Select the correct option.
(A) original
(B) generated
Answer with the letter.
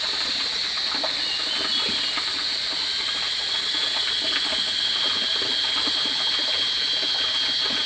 A